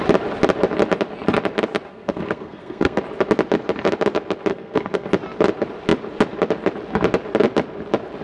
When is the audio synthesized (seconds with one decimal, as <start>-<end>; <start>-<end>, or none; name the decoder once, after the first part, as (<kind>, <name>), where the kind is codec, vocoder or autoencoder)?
1.9-3.0 (codec, SNAC); 4.5-5.1